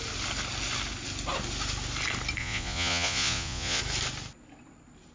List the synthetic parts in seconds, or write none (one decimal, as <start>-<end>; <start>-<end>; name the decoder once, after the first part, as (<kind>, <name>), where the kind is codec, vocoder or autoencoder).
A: 2.4-3.8 (vocoder, Vocos)